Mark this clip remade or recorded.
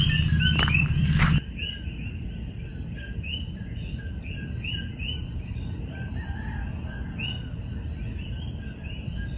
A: recorded